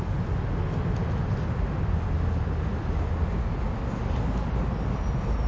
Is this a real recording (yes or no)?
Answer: yes